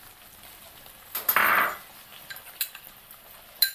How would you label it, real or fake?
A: real